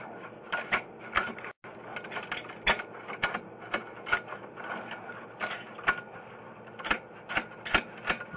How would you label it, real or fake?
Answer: real